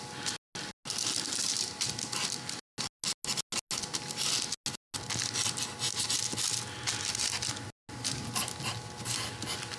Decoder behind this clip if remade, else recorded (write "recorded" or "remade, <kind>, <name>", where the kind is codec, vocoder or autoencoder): recorded